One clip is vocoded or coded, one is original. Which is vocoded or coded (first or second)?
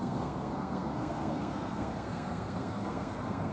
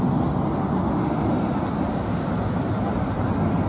first